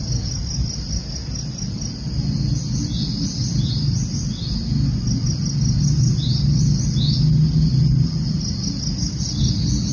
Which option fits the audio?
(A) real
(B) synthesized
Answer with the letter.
A